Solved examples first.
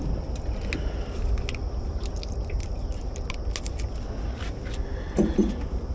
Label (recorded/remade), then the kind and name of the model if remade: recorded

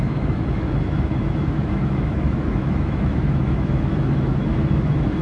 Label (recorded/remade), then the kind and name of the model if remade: remade, autoencoder, DAC-VAE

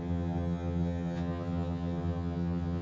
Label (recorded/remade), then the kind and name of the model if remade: remade, vocoder, HiFi-GAN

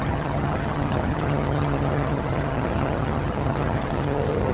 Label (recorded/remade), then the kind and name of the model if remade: remade, vocoder, HiFi-GAN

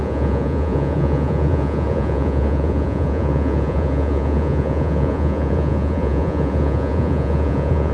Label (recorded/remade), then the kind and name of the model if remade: remade, vocoder, Vocos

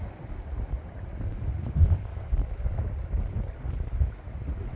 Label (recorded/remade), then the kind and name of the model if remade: recorded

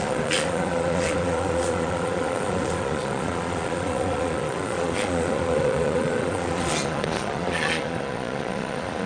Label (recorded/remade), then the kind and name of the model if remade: remade, vocoder, Vocos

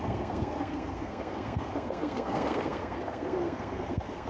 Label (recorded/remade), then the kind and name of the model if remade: remade, codec, SNAC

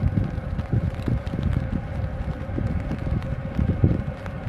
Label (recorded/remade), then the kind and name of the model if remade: remade, vocoder, BigVGAN v2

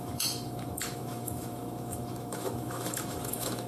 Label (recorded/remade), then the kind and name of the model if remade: remade, autoencoder, DAC-VAE